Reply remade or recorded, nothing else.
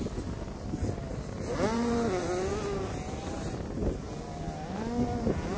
recorded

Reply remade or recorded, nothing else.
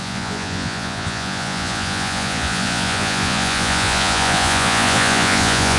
remade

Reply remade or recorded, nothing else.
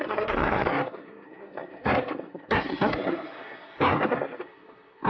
remade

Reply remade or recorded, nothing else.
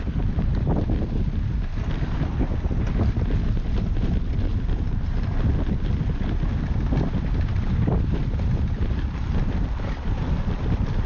recorded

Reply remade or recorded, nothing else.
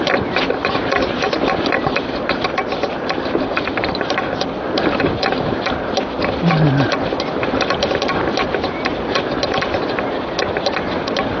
recorded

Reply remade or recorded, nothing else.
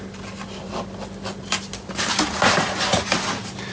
recorded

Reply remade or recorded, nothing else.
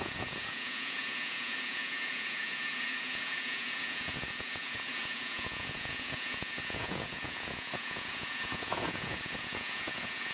remade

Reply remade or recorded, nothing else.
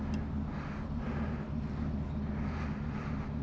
recorded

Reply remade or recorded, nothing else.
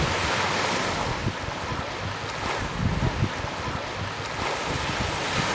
recorded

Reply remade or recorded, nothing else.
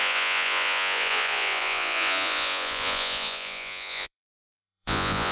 remade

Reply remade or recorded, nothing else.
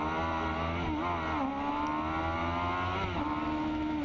recorded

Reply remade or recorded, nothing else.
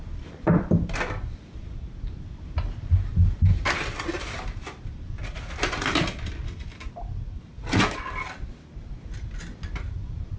recorded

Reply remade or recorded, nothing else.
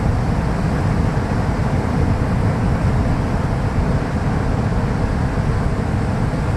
recorded